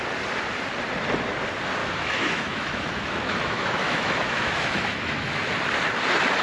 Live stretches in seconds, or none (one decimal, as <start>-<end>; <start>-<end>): 0.0-1.8; 5.6-6.4